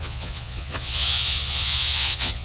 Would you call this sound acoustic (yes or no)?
no